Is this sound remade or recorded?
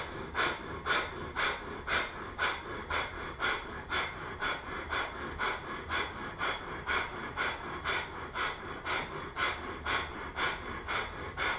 remade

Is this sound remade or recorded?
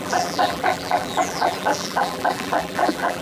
remade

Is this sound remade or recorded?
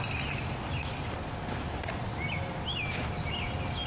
recorded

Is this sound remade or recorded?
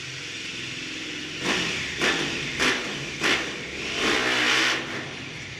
recorded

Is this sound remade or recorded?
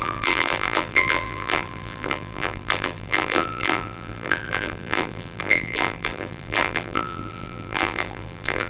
remade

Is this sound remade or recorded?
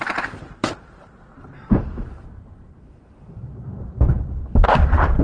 remade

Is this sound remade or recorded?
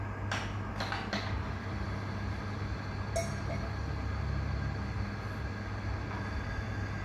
recorded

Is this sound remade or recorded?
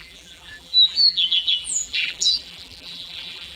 remade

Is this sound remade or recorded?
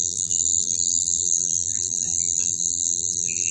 remade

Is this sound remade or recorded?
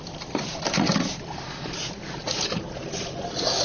recorded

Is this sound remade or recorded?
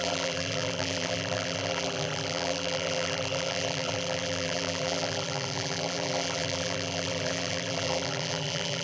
remade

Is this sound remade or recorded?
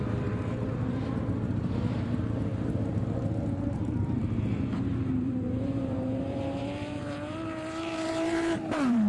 remade